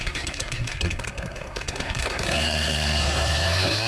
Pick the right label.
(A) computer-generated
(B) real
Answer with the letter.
A